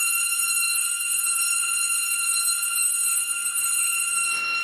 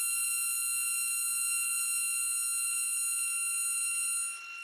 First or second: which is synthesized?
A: first